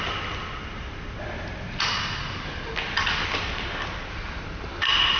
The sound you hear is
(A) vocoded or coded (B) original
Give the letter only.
B